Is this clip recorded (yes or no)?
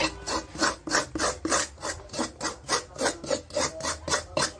yes